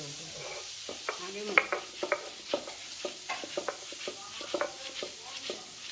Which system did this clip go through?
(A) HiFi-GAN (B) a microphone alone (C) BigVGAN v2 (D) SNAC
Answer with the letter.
B